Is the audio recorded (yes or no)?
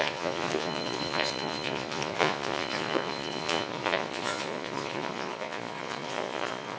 no